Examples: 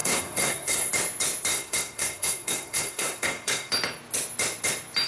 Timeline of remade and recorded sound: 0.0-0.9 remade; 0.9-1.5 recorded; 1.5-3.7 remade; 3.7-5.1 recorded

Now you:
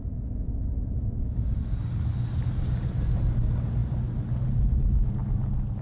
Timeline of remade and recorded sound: 0.0-5.8 recorded

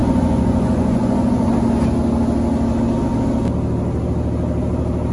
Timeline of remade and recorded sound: 0.0-1.5 remade; 1.5-5.1 recorded